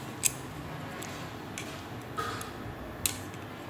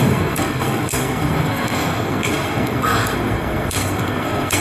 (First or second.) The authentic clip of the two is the first